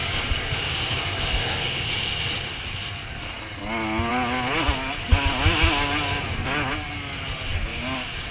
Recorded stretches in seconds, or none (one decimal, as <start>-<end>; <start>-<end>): 1.9-7.7